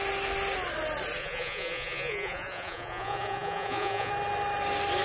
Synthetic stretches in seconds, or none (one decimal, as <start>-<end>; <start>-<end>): 1.2-4.1